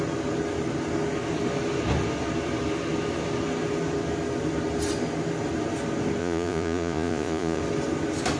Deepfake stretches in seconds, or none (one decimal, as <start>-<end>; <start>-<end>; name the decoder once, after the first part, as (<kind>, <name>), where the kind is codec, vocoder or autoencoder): 6.2-7.6 (vocoder, Vocos)